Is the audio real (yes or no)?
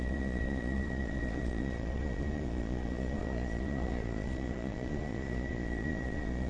no